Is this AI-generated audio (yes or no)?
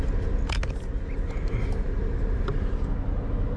no